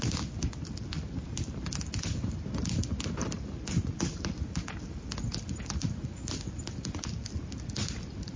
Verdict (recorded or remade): recorded